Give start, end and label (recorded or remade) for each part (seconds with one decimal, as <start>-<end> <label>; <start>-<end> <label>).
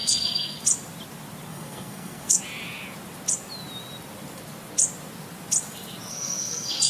0.0-0.6 remade; 0.6-1.5 recorded; 1.5-2.4 remade; 2.4-6.1 recorded; 6.1-6.9 remade